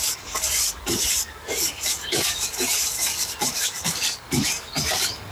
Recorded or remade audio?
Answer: remade